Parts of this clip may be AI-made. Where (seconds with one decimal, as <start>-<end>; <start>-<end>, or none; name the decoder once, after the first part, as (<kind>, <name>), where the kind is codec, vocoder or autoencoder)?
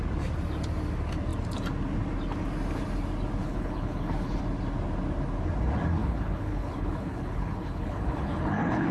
3.4-4.4 (codec, HILCodec); 6.0-8.9